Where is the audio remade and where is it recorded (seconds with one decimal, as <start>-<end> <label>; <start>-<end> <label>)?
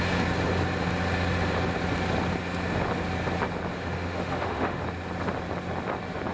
0.0-3.7 recorded; 3.7-4.8 remade; 4.8-6.3 recorded